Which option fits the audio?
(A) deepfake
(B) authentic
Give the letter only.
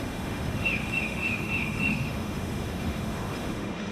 A